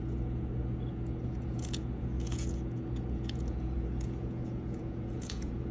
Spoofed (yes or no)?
yes